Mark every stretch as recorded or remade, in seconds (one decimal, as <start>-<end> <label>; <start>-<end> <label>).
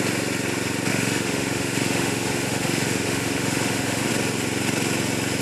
0.0-0.9 recorded; 0.9-4.1 remade; 4.1-5.4 recorded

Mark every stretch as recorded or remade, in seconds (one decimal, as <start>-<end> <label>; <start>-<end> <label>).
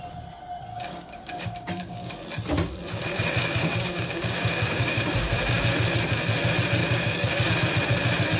0.0-0.7 recorded; 0.7-2.1 remade; 2.1-3.4 recorded; 3.4-5.3 remade; 5.3-6.8 recorded; 6.8-7.5 remade; 7.5-8.4 recorded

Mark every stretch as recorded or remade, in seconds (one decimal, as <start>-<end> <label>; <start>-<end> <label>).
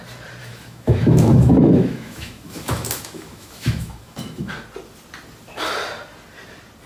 0.0-0.4 recorded; 0.4-4.5 remade; 4.5-6.9 recorded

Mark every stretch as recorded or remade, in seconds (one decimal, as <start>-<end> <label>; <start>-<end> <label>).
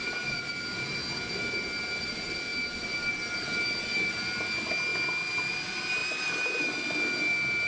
0.0-7.7 recorded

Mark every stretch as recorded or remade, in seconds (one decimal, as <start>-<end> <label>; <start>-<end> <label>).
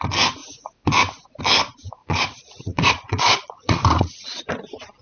0.0-2.0 recorded; 2.0-4.5 remade; 4.5-5.0 recorded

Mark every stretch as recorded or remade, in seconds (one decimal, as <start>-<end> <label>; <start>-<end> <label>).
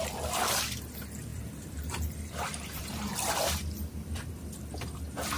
0.0-1.3 recorded; 1.3-4.3 remade; 4.3-5.4 recorded